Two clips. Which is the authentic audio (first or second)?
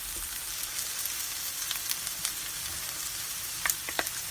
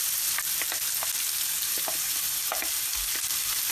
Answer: second